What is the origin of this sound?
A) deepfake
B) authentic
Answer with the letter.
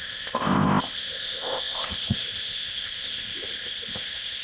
A